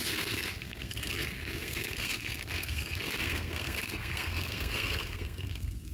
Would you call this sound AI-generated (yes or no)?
yes